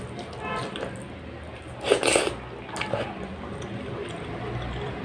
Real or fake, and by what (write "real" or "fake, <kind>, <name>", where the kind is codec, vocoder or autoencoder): real